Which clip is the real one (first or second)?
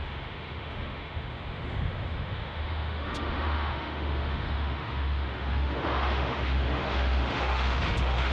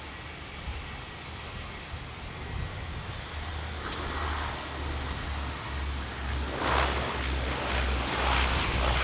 second